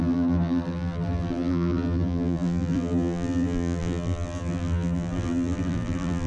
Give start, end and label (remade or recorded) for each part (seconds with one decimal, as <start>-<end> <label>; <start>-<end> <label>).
0.0-6.3 remade